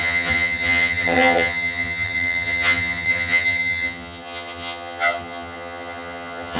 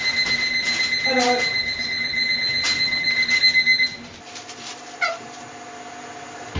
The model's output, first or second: first